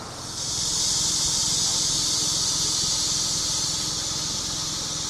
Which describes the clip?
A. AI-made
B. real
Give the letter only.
B